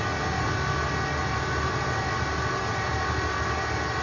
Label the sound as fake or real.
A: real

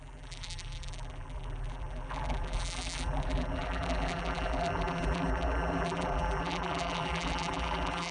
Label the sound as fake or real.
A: fake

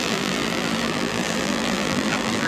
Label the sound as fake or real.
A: fake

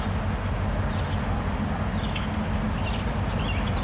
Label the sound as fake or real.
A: real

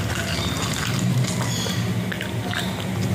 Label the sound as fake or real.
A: real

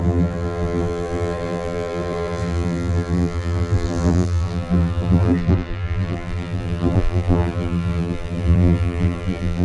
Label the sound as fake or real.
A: fake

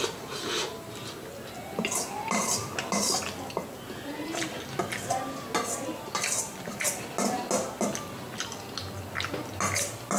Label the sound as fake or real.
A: real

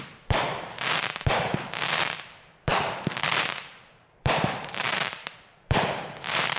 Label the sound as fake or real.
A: fake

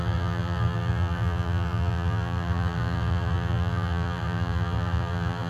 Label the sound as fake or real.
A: fake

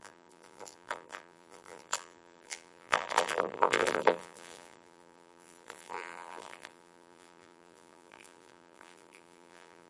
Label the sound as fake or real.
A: fake